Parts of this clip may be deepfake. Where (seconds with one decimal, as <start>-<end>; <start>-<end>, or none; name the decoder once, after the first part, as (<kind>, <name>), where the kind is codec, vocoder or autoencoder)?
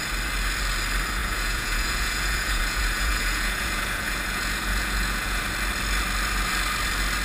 1.2-5.4 (vocoder, Vocos)